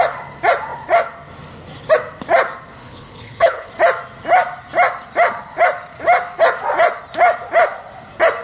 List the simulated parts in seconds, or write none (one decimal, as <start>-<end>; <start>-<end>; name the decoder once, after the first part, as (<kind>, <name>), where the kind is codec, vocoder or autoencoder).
2.8-3.7 (codec, HILCodec)